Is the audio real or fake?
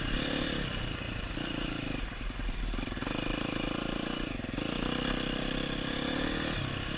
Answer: real